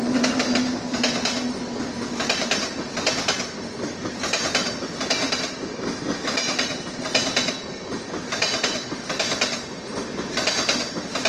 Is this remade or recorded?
recorded